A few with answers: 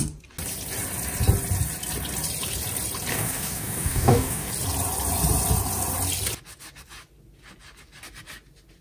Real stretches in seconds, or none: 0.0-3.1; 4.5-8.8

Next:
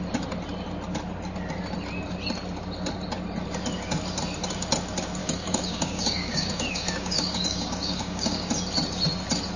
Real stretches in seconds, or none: 0.0-5.2; 8.5-9.6